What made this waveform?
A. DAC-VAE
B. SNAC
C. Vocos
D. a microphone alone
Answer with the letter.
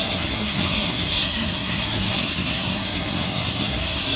B